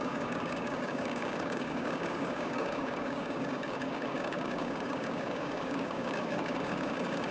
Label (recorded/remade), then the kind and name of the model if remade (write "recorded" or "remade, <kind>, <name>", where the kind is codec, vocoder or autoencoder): remade, codec, DAC